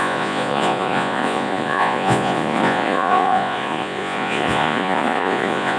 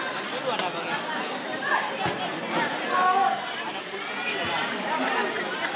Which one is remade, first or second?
first